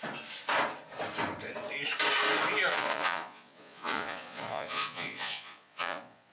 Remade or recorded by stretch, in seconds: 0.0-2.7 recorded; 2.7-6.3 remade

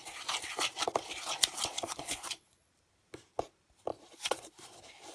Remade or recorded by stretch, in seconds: 0.0-1.7 recorded; 1.7-2.7 remade; 2.7-3.9 recorded; 3.9-4.5 remade; 4.5-5.1 recorded

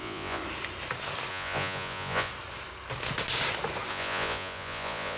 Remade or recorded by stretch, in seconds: 0.0-0.4 remade; 0.4-1.3 recorded; 1.3-2.3 remade; 2.3-3.9 recorded; 3.9-5.2 remade

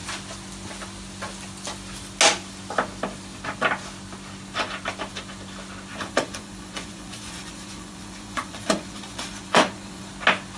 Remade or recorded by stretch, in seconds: 0.0-5.9 recorded; 5.9-10.1 remade; 10.1-10.6 recorded

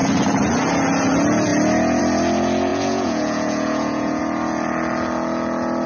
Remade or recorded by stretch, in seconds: 0.0-2.7 recorded; 2.7-4.2 remade; 4.2-5.9 recorded

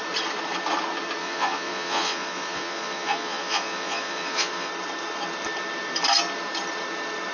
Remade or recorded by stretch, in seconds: 0.0-1.2 recorded; 1.2-4.7 remade; 4.7-7.3 recorded

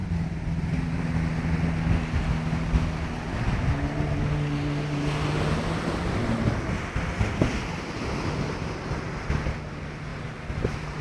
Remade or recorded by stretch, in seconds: 0.0-11.0 recorded

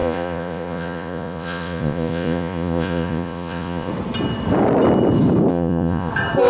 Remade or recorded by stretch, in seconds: 0.0-3.9 remade; 3.9-5.5 recorded; 5.5-6.1 remade; 6.1-6.5 recorded